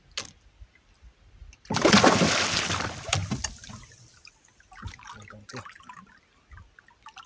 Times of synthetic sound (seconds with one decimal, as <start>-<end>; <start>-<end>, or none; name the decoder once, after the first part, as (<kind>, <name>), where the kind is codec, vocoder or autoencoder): none